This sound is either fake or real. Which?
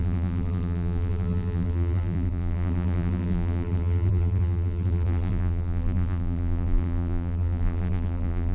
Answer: fake